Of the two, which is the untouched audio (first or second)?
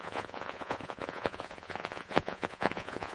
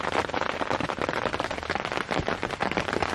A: second